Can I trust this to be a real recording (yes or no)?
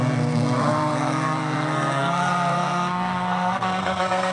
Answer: no